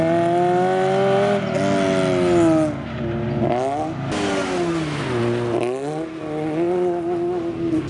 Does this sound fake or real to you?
real